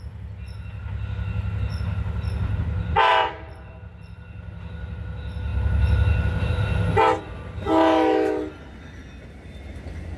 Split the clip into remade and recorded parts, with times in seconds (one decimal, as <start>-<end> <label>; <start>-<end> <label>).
0.0-3.1 recorded; 3.1-3.7 remade; 3.7-10.2 recorded

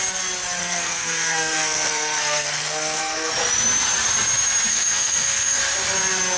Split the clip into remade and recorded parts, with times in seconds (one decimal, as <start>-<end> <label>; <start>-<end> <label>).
0.0-0.6 recorded; 0.6-3.3 remade; 3.3-4.7 recorded; 4.7-5.6 remade; 5.6-6.4 recorded

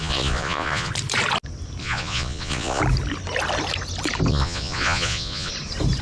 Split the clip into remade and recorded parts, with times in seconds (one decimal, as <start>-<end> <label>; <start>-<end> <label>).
0.0-0.9 remade; 0.9-1.8 recorded; 1.8-2.8 remade; 2.8-4.3 recorded; 4.3-5.5 remade; 5.5-6.0 recorded